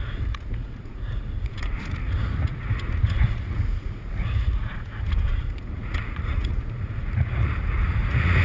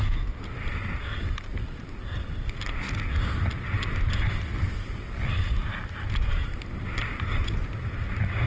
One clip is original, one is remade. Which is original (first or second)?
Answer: second